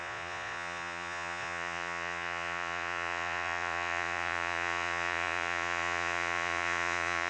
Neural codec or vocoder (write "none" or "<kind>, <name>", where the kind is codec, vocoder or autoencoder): vocoder, Vocos